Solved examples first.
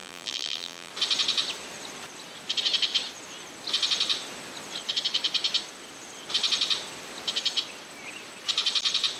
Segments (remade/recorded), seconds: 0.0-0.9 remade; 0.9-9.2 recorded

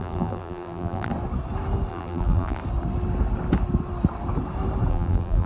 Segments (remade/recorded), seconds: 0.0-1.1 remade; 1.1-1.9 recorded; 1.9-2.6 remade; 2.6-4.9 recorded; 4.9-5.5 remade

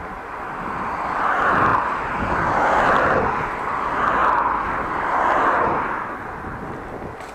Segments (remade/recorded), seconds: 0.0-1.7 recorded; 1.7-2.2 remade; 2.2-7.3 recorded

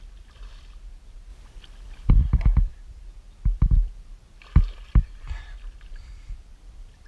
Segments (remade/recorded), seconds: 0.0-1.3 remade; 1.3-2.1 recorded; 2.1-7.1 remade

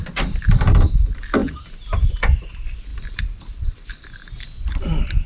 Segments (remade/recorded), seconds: 0.0-1.4 remade; 1.4-2.1 recorded; 2.1-5.3 remade

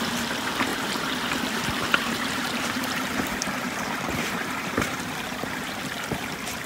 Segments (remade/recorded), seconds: 0.0-0.7 recorded; 0.7-1.3 remade; 1.3-1.8 recorded; 1.8-5.8 remade; 5.8-6.7 recorded

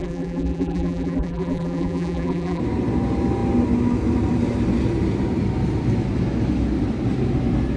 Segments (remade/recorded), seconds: 0.0-2.6 remade; 2.6-7.8 recorded